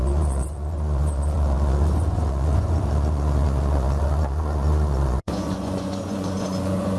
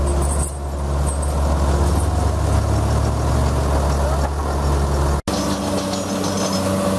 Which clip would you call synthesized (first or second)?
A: first